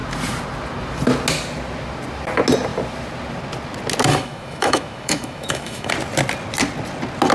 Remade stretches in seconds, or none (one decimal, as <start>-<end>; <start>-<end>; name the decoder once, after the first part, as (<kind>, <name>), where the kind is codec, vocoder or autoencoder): 4.1-5.9 (autoencoder, DAC-VAE)